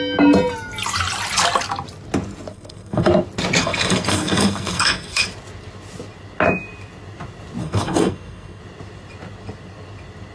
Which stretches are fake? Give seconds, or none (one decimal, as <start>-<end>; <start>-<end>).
2.5-3.1; 3.6-5.2; 7.6-8.6